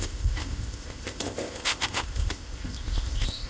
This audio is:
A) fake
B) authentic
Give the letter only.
A